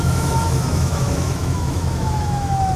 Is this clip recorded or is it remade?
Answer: remade